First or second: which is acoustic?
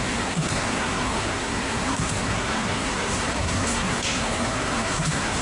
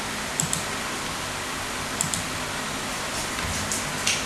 second